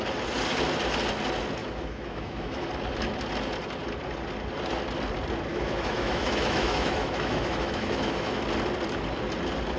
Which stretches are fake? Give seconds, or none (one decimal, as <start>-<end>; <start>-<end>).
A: 1.6-2.7; 5.5-8.4